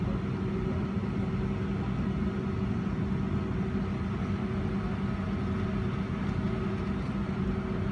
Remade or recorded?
recorded